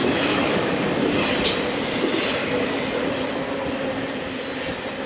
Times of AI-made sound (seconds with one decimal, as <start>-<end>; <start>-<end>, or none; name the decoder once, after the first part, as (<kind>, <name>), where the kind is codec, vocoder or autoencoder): 0.0-0.7 (autoencoder, DAC-VAE); 2.4-3.0